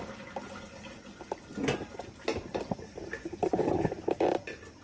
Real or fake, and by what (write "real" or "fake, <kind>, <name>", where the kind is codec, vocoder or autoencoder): real